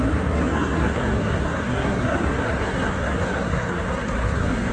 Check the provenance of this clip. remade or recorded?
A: remade